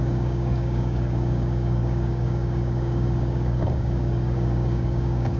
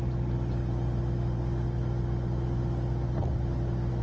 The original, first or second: second